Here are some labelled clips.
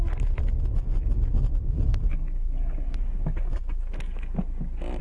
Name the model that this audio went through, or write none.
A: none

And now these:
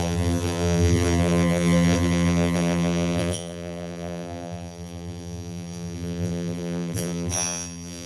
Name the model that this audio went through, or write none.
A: vocoder, BigVGAN v2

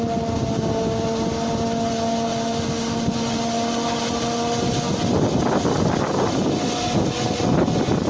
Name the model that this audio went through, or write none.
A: none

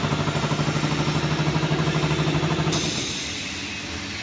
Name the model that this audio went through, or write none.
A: none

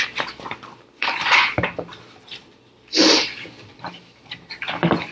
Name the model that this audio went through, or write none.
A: vocoder, BigVGAN v2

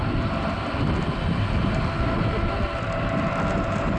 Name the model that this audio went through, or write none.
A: none